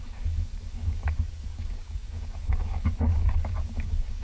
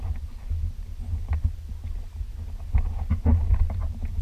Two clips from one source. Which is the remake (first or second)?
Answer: first